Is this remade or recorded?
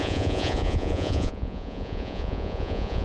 remade